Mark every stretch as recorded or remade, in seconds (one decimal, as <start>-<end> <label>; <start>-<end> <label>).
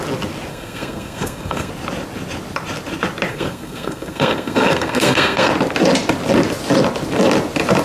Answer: 0.0-0.5 recorded; 0.5-1.7 remade; 1.7-3.3 recorded; 3.3-5.5 remade; 5.5-7.8 recorded